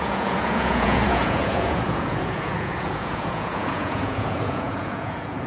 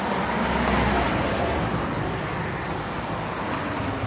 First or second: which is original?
second